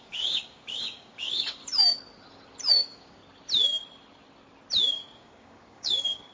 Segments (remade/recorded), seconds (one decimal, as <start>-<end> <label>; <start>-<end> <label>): 0.0-1.6 remade; 1.6-2.7 recorded; 2.7-3.2 remade; 3.2-4.9 recorded; 4.9-6.3 remade